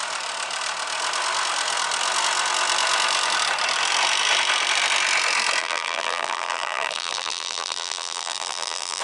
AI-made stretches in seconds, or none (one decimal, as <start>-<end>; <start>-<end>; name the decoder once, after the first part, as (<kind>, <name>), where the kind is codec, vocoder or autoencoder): 5.6-9.0 (vocoder, BigVGAN v2)